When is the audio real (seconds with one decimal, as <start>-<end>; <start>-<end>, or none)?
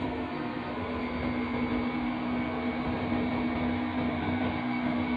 1.0-4.1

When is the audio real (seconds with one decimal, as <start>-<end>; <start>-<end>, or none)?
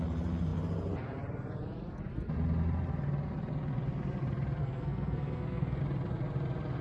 0.0-4.6; 5.8-6.8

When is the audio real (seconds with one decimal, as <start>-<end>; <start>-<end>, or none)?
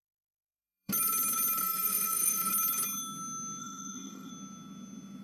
0.9-1.6; 2.5-3.6; 4.3-5.2